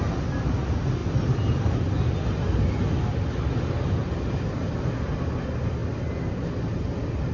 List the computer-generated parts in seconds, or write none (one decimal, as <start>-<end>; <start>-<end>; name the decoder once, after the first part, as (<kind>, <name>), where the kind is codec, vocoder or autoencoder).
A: none

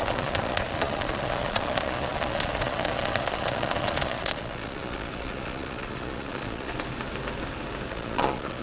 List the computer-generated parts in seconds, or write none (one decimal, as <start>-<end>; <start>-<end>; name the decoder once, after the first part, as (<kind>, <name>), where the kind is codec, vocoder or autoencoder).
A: 0.0-6.7 (vocoder, Vocos); 7.9-8.6